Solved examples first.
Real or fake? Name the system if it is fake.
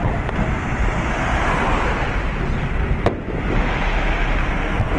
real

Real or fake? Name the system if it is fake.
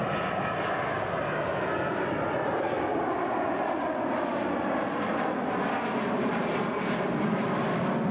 real